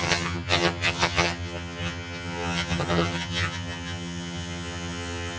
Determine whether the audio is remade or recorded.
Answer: remade